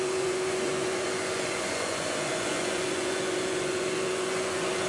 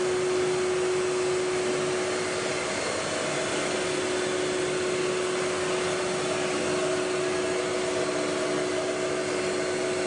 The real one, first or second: second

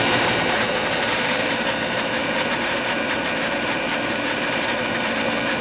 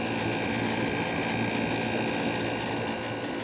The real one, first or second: second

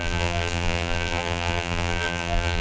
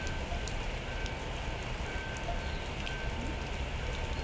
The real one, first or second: second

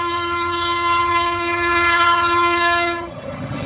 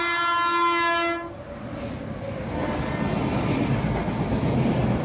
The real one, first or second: second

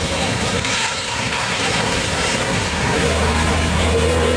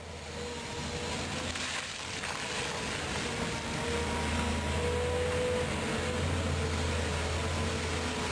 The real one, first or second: second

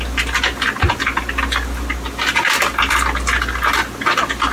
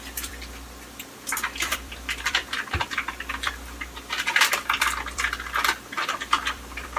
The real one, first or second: first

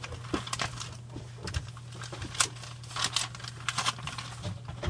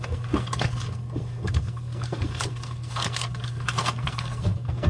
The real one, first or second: first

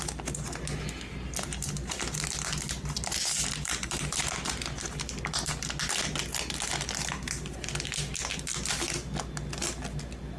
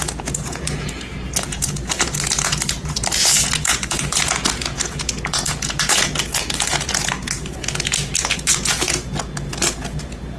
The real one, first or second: first